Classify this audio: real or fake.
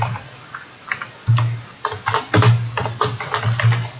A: real